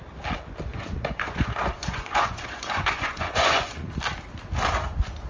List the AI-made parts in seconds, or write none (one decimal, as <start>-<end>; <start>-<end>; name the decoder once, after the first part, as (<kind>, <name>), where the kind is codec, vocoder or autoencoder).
0.7-3.9 (vocoder, Vocos)